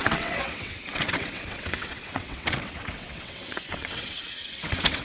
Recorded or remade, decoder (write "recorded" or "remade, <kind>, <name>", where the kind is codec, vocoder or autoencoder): remade, vocoder, WaveNeXt